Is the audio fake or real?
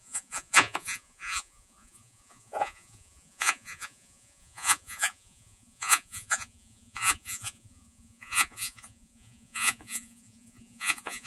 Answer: fake